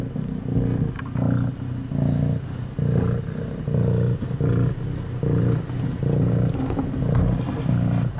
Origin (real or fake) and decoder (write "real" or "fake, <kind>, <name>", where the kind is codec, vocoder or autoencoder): real